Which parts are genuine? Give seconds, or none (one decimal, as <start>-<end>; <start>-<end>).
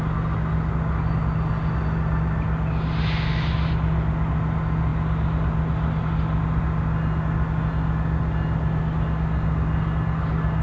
0.0-10.6